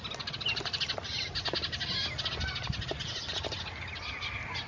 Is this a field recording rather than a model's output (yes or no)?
yes